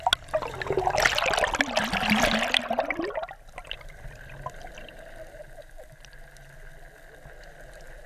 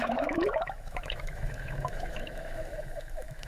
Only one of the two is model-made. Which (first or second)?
second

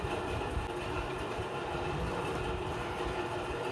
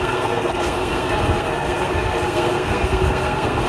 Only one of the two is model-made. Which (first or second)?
second